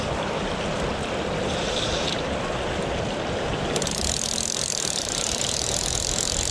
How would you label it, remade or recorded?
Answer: recorded